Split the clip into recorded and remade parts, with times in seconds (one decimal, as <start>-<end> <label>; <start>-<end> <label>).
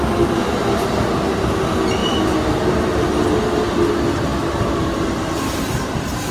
0.0-6.3 recorded